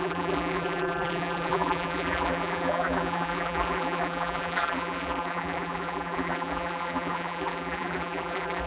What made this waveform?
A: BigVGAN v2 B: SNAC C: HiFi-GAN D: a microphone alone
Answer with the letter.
A